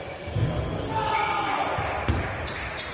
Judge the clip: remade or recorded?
recorded